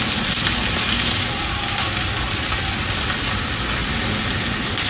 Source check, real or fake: real